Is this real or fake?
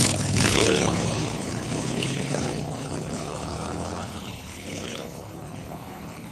fake